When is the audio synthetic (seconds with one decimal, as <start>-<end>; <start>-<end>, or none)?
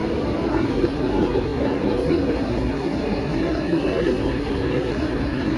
0.5-5.6